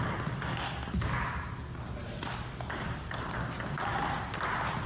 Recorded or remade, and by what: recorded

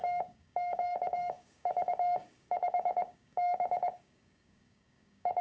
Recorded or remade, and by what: remade, codec, DAC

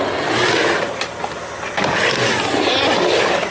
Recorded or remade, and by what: recorded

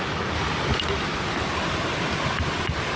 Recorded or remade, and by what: recorded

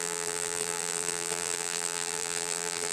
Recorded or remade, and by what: remade, vocoder, BigVGAN v2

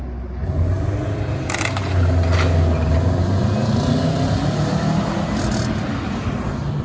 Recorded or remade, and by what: recorded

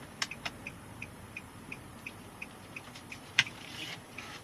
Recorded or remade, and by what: remade, vocoder, BigVGAN v2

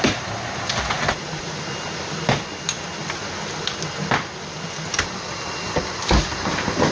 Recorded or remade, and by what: recorded